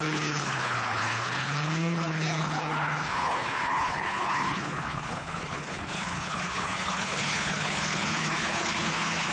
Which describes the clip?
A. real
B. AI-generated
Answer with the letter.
B